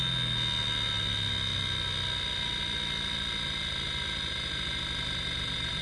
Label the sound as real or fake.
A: real